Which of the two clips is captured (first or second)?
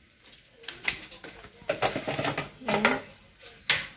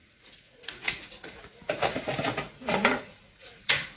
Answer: first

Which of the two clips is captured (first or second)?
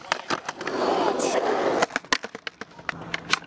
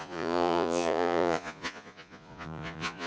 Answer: first